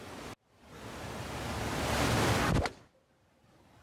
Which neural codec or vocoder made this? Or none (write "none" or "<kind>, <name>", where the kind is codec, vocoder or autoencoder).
none